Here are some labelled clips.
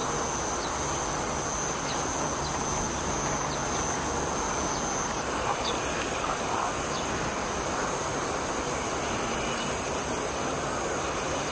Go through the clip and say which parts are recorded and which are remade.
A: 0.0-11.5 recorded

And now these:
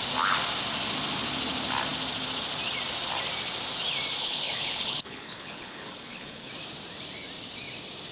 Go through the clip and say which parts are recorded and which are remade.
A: 0.0-4.2 recorded; 4.2-6.5 remade; 6.5-8.1 recorded

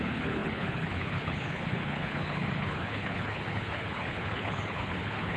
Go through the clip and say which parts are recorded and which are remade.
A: 0.0-5.4 remade

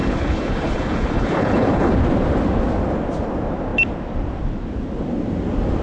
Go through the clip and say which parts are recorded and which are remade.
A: 0.0-1.9 remade; 1.9-5.8 recorded

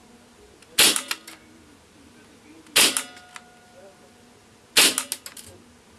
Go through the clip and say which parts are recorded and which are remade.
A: 0.0-6.0 recorded

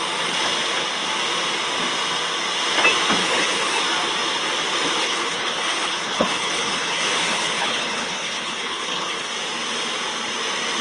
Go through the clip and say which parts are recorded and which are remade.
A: 0.0-3.2 recorded; 3.2-3.8 remade; 3.8-5.0 recorded; 5.0-9.3 remade; 9.3-10.8 recorded

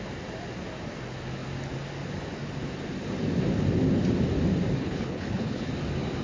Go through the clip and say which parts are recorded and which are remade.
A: 0.0-4.8 recorded; 4.8-5.7 remade; 5.7-6.2 recorded

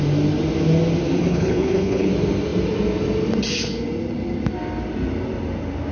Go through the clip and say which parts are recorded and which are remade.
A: 0.0-1.2 recorded; 1.2-2.1 remade; 2.1-5.9 recorded